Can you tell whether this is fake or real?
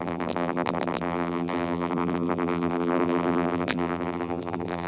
fake